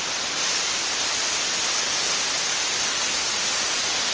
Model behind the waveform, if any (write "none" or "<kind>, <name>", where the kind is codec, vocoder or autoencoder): none